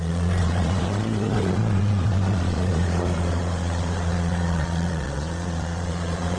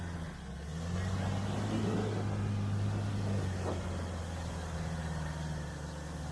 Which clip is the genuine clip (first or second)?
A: second